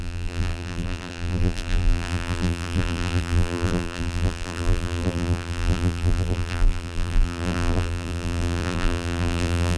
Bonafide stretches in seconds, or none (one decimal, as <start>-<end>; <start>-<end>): none